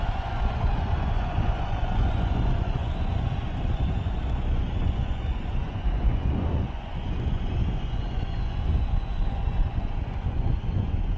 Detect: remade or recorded remade